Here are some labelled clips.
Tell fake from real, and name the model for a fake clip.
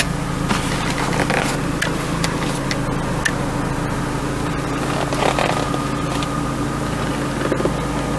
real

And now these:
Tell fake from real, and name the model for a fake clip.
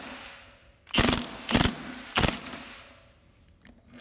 real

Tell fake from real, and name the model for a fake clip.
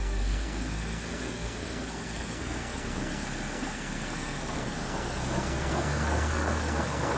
fake, codec, SNAC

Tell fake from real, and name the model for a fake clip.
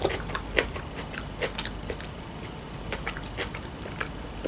real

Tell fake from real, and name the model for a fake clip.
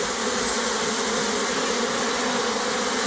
real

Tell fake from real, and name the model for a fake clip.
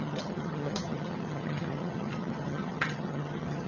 fake, vocoder, HiFi-GAN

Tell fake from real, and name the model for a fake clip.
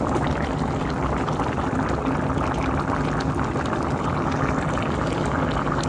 real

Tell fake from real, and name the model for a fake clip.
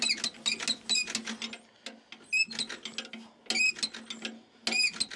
real